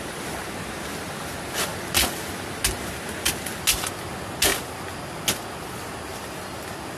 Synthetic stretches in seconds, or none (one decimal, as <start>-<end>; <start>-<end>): none